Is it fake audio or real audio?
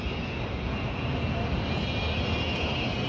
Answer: real